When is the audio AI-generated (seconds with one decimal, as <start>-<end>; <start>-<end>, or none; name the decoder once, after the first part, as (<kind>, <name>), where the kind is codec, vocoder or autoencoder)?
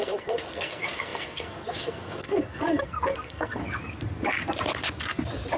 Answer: 0.0-3.6 (codec, SNAC)